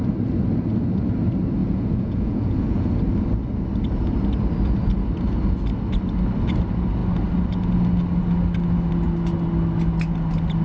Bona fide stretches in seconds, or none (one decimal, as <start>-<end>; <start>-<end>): 0.0-1.6; 3.0-10.6